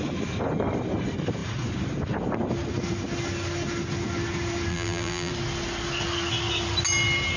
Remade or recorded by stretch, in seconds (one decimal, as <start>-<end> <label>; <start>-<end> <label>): 0.0-4.7 recorded; 4.7-5.3 remade; 5.3-7.4 recorded